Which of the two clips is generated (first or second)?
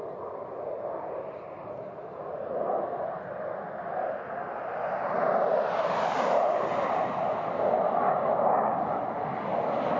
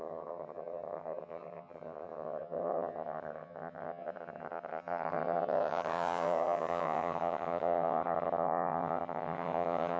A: second